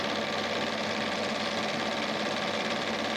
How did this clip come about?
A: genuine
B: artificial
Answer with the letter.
A